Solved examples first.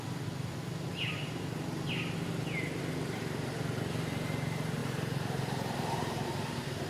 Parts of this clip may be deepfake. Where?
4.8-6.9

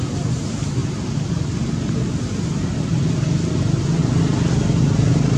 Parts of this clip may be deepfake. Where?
none

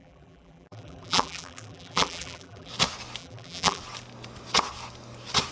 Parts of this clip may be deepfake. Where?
0.0-2.7; 3.2-3.8

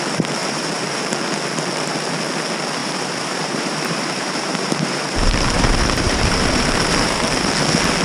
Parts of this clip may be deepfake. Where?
0.4-1.0; 2.8-7.5

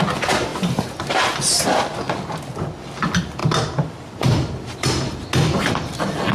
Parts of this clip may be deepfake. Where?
3.4-4.9